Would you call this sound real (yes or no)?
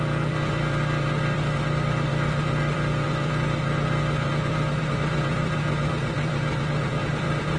no